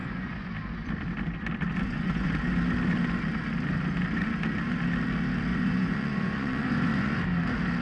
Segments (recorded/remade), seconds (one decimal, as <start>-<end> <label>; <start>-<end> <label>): 0.0-0.5 remade; 0.5-1.7 recorded; 1.7-2.3 remade; 2.3-5.5 recorded; 5.5-7.2 remade; 7.2-7.8 recorded